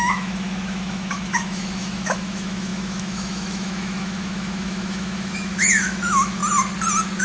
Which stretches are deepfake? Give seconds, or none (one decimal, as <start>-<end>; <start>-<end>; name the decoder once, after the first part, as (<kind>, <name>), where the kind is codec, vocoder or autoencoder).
0.0-6.4 (autoencoder, DAC-VAE)